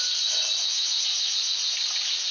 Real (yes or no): yes